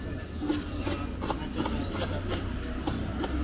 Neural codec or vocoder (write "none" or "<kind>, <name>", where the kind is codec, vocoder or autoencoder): none